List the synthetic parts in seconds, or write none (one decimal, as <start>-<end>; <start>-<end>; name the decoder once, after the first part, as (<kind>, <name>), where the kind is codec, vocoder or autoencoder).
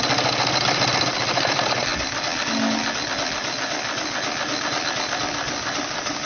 0.0-1.9 (vocoder, BigVGAN v2); 5.7-6.3